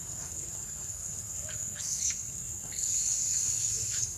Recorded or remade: remade